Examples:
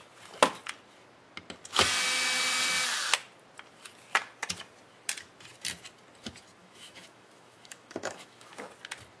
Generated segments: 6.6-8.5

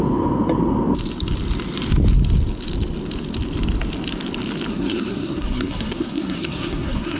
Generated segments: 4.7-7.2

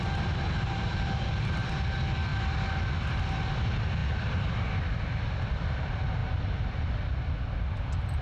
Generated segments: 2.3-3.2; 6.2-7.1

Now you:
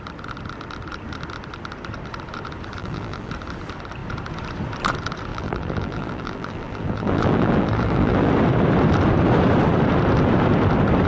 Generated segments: 2.8-3.3; 5.3-8.3

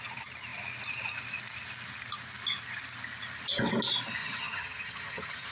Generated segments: 4.2-5.5